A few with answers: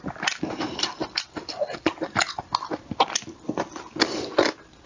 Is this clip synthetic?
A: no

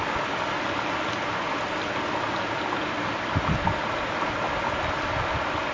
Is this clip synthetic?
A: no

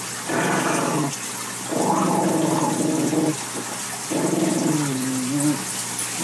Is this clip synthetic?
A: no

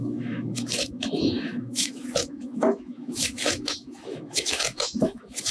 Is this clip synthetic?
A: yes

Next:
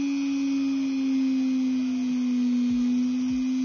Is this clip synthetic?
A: no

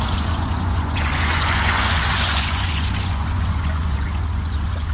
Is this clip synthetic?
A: yes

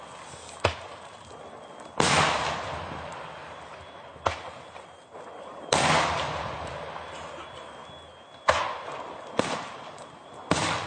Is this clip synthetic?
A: yes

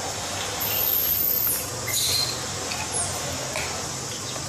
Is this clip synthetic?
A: no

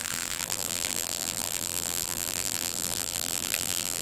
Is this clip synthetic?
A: yes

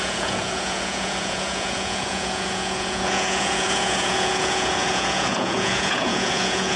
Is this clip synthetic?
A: yes